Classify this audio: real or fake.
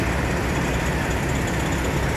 real